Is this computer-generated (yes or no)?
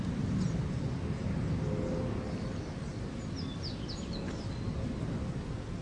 no